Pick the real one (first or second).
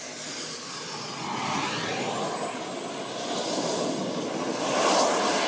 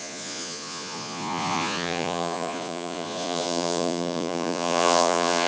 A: first